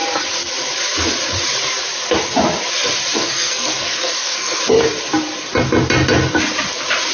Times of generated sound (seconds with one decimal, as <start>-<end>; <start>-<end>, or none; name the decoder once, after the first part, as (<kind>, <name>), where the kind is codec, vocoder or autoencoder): 3.2-4.6 (codec, SNAC)